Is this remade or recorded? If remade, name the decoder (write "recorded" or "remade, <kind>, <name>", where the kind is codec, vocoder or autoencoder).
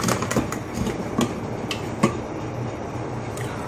recorded